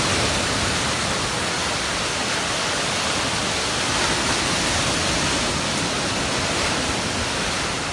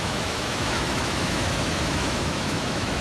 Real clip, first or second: first